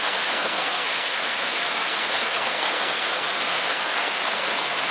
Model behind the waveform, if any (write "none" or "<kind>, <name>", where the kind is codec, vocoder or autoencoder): codec, SNAC